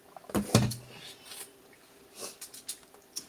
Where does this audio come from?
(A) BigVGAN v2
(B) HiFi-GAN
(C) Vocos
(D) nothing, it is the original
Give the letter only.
D